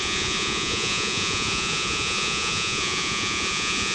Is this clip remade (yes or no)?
yes